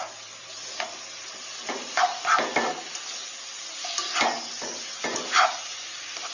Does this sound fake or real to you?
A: real